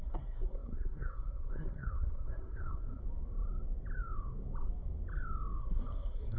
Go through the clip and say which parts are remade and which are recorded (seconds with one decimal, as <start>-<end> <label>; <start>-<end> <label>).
0.0-3.0 remade; 3.0-5.6 recorded; 5.6-6.4 remade

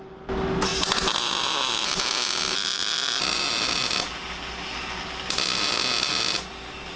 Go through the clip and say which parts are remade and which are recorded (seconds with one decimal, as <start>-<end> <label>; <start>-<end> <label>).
0.0-7.0 recorded

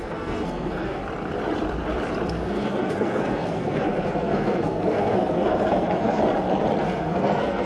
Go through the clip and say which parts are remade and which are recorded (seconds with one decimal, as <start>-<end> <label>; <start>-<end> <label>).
0.0-1.0 remade; 1.0-2.3 recorded; 2.3-6.2 remade; 6.2-6.8 recorded; 6.8-7.7 remade

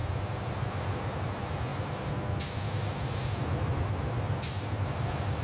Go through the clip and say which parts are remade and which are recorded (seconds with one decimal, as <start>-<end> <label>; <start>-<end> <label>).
0.0-5.4 recorded